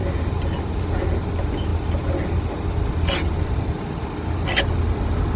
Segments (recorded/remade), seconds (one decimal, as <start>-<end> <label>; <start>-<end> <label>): 0.0-5.4 recorded